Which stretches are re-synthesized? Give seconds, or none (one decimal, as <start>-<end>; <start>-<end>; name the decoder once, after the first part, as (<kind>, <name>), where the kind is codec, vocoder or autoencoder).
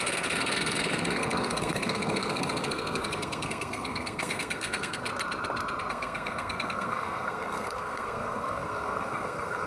0.0-5.1 (codec, SNAC); 5.9-9.7